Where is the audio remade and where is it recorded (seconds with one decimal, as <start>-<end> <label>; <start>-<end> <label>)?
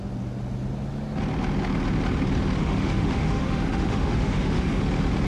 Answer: 0.0-2.6 recorded; 2.6-4.8 remade; 4.8-5.3 recorded